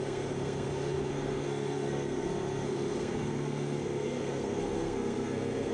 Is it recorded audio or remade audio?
remade